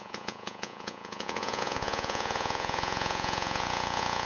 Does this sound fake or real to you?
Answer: fake